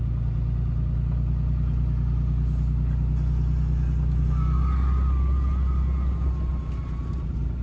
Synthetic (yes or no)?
no